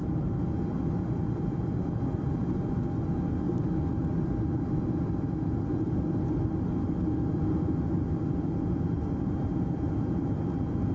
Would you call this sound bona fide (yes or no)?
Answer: yes